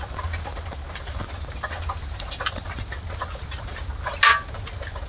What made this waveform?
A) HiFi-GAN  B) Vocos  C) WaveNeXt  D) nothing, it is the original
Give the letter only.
D